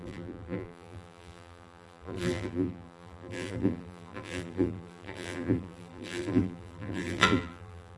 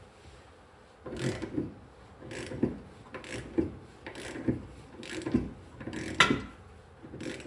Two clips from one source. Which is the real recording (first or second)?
second